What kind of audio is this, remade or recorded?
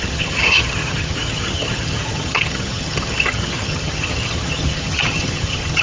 remade